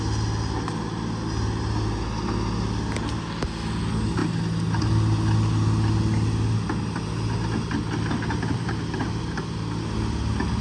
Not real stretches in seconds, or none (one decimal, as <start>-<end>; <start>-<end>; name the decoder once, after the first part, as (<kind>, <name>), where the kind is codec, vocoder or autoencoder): none